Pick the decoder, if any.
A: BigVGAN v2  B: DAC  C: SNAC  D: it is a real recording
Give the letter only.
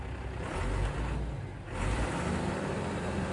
D